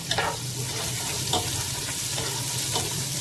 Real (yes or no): yes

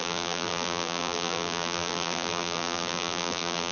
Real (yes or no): no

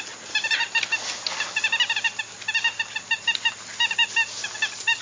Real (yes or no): yes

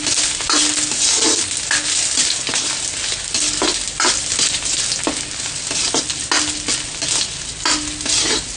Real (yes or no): yes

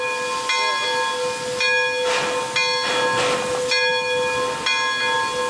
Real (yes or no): yes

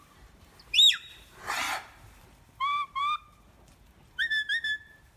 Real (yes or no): no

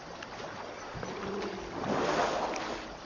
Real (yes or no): yes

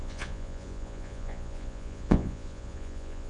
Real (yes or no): no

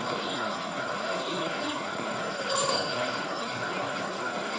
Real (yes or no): no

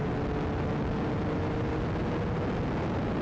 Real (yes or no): yes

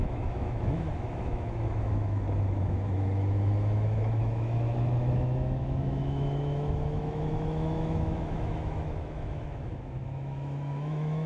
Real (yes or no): no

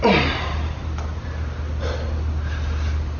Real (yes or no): yes